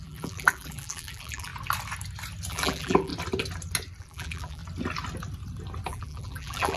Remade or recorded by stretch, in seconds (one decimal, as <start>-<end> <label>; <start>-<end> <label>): 0.0-1.5 remade; 1.5-2.5 recorded; 2.5-3.1 remade; 3.1-4.0 recorded; 4.0-4.6 remade; 4.6-5.9 recorded; 5.9-6.8 remade